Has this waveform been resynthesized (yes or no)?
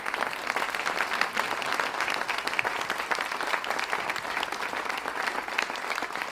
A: no